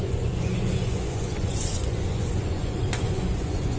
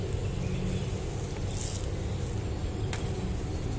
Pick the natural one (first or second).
second